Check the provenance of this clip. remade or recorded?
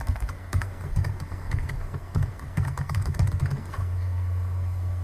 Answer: remade